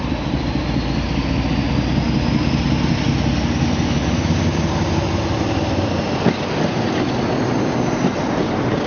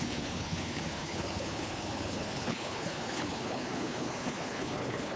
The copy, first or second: second